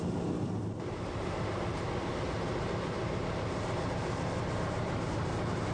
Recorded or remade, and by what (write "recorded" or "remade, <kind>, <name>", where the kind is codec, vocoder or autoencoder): remade, vocoder, BigVGAN v2